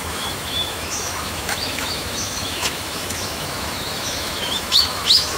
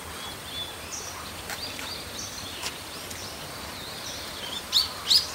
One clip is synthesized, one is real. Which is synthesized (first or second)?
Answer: first